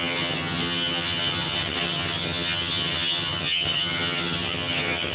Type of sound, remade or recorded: remade